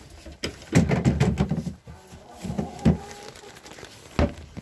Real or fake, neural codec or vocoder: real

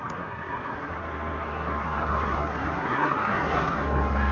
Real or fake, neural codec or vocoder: fake, codec, SNAC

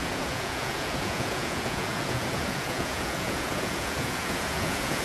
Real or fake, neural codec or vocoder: fake, vocoder, Vocos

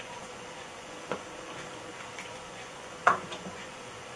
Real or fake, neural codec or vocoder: fake, vocoder, Vocos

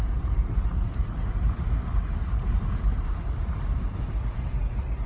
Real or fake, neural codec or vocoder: fake, vocoder, BigVGAN v2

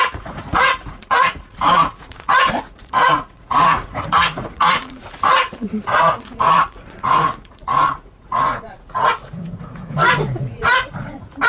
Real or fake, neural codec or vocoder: fake, vocoder, Vocos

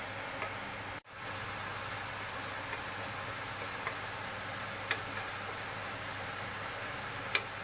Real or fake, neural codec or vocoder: real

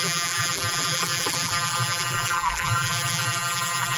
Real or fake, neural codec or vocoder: fake, vocoder, BigVGAN v2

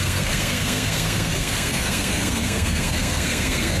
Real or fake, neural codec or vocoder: fake, codec, SNAC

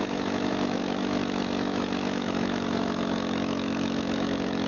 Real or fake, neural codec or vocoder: fake, autoencoder, DAC-VAE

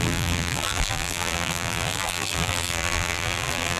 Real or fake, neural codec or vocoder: fake, vocoder, BigVGAN v2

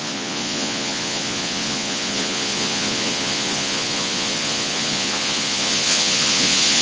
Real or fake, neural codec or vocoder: fake, vocoder, Vocos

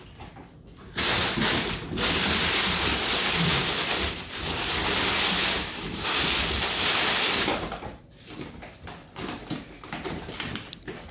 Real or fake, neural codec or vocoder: real